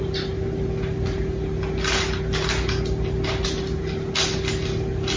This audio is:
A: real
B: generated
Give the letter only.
A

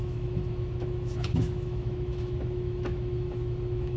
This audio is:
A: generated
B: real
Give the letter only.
A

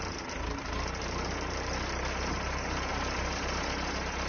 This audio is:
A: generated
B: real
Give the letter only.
B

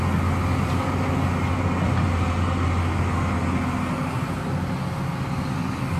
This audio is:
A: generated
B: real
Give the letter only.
B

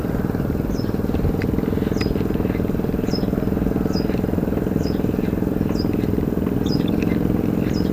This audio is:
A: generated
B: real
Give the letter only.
B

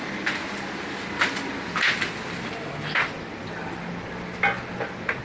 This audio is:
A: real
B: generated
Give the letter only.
A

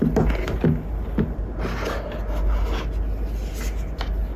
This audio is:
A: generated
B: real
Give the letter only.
B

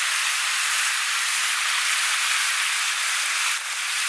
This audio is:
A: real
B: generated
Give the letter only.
A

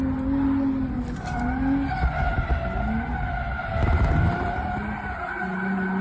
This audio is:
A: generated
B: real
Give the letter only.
B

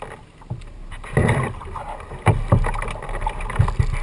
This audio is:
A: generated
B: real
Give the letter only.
B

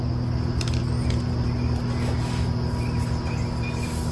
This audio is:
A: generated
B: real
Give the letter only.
B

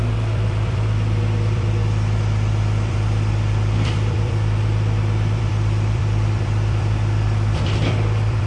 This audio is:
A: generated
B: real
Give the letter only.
A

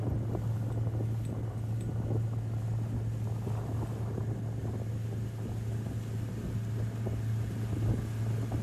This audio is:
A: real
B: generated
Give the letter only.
A